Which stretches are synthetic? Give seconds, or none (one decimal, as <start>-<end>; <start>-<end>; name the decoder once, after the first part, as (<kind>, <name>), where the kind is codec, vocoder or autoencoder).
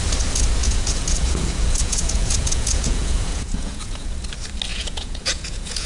0.6-4.1 (vocoder, Vocos); 4.7-5.9